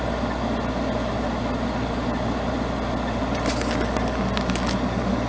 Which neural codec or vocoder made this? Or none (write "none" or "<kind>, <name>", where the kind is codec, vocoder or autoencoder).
none